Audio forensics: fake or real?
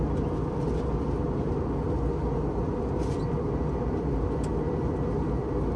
real